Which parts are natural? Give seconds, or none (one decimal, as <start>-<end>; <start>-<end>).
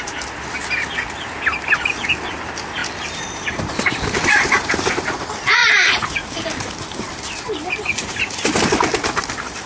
0.0-2.8; 4.8-5.6; 8.6-9.7